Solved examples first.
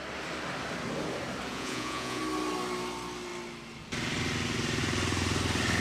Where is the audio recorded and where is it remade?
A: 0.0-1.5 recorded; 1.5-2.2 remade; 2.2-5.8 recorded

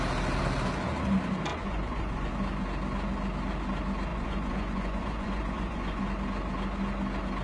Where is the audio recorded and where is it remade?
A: 0.0-1.5 recorded; 1.5-2.3 remade; 2.3-4.1 recorded; 4.1-6.0 remade; 6.0-7.4 recorded

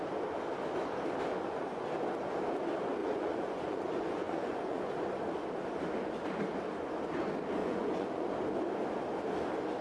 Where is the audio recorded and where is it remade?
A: 0.0-1.3 recorded; 1.3-1.9 remade; 1.9-3.0 recorded; 3.0-4.9 remade; 4.9-7.6 recorded; 7.6-8.3 remade; 8.3-9.8 recorded

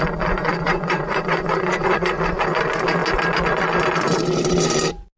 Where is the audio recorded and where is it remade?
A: 0.0-0.4 recorded; 0.4-2.2 remade; 2.2-5.2 recorded

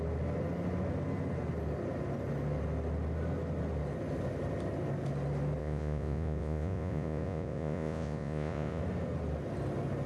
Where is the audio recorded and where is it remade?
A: 0.0-5.6 recorded; 5.6-8.8 remade; 8.8-10.1 recorded

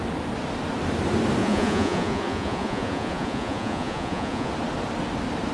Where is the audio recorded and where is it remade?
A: 0.0-1.4 recorded; 1.4-4.5 remade; 4.5-5.5 recorded

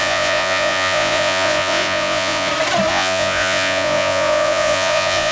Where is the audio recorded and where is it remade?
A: 0.0-2.5 remade; 2.5-2.9 recorded; 2.9-5.3 remade